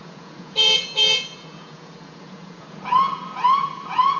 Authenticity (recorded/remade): remade